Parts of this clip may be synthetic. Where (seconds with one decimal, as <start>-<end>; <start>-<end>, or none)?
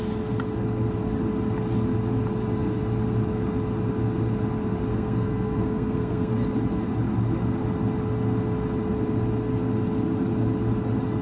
4.9-6.3